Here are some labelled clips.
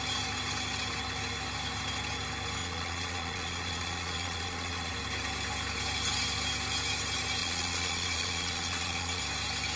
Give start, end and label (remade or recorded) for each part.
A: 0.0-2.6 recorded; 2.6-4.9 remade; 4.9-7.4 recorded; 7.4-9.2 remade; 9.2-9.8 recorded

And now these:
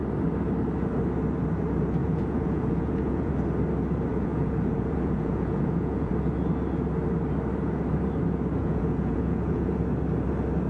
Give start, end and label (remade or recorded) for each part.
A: 0.0-2.0 recorded; 2.0-3.3 remade; 3.3-4.1 recorded; 4.1-6.1 remade; 6.1-8.6 recorded; 8.6-9.7 remade; 9.7-10.7 recorded

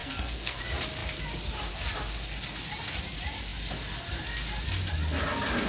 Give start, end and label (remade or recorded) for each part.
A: 0.0-0.6 remade; 0.6-5.7 recorded

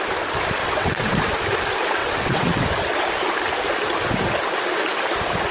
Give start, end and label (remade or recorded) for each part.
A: 0.0-0.6 recorded; 0.6-1.2 remade; 1.2-2.0 recorded; 2.0-2.6 remade; 2.6-5.5 recorded

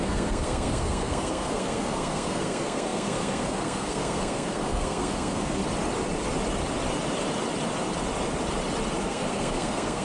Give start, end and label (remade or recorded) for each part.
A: 0.0-5.6 remade; 5.6-9.0 recorded; 9.0-10.0 remade